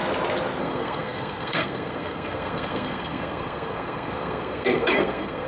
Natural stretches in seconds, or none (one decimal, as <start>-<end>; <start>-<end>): 0.0-0.6